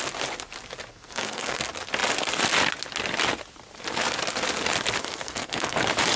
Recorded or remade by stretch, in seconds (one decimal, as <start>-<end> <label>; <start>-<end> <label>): 0.0-0.9 recorded; 0.9-1.6 remade; 1.6-5.0 recorded; 5.0-5.8 remade; 5.8-6.2 recorded